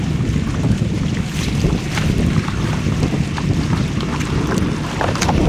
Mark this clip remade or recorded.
recorded